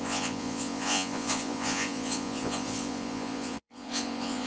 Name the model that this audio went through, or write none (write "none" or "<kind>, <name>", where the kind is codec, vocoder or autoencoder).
vocoder, Vocos